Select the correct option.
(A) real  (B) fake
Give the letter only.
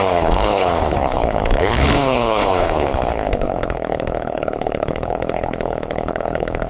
B